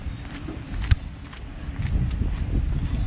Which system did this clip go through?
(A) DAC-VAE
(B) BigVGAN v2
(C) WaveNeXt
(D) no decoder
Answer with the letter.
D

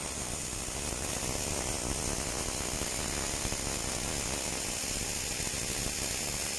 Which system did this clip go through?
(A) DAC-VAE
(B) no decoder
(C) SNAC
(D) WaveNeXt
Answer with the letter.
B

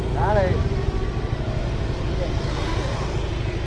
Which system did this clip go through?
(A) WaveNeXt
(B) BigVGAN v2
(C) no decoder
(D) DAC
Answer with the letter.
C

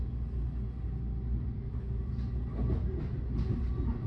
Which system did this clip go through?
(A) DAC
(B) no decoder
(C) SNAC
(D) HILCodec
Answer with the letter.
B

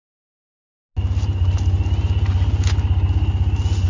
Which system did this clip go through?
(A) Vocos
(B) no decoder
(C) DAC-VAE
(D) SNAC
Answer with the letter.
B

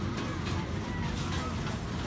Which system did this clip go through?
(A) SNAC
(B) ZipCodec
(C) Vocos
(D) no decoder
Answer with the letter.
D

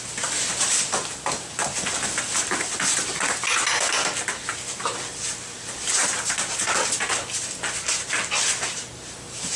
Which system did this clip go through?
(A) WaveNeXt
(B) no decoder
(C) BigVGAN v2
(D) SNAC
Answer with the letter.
B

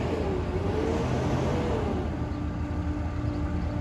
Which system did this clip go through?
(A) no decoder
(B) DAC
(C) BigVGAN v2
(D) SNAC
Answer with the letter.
A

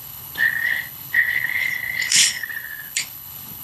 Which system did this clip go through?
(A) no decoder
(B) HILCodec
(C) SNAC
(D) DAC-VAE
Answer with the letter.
B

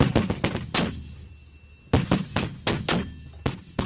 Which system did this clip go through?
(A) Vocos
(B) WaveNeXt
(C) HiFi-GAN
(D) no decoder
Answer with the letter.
D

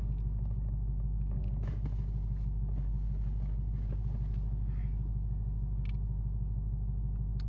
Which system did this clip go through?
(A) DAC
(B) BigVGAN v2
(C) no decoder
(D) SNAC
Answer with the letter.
C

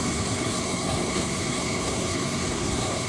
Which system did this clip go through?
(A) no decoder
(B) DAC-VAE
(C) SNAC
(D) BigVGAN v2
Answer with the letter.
C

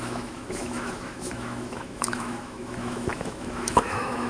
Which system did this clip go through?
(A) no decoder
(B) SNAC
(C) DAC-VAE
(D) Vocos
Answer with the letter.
C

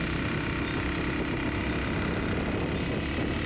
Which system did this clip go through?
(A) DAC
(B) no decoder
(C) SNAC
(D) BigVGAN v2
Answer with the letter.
B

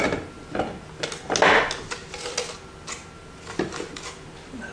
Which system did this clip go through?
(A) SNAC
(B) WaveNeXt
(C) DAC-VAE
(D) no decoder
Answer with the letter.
D